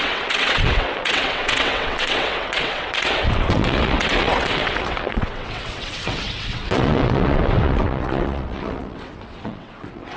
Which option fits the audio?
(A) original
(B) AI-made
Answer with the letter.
B